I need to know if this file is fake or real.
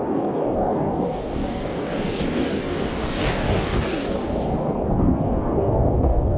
fake